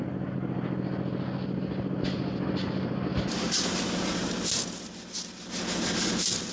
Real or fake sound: real